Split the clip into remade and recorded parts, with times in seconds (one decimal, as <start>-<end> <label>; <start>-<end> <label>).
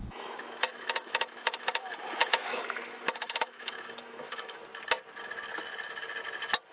0.0-4.6 remade; 4.6-6.7 recorded